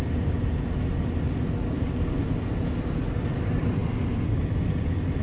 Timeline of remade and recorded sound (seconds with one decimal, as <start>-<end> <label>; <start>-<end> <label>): 0.0-5.2 recorded